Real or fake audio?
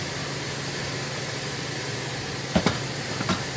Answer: fake